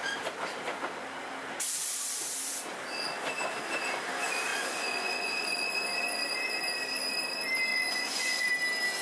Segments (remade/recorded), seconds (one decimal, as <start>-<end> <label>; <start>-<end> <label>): 0.0-4.5 recorded; 4.5-5.7 remade; 5.7-7.7 recorded; 7.7-8.5 remade; 8.5-9.0 recorded

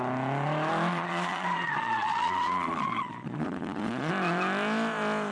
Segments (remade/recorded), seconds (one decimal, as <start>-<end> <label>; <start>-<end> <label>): 0.0-0.9 recorded; 0.9-4.1 remade; 4.1-5.3 recorded